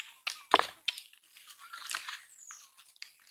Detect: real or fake real